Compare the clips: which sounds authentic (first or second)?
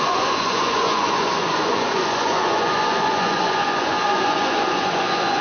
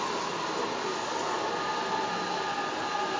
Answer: second